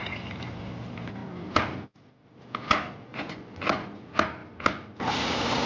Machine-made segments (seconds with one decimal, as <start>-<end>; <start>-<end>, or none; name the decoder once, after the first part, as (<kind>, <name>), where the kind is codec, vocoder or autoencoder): 3.1-4.0 (vocoder, Vocos)